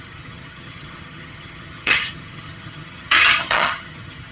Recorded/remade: remade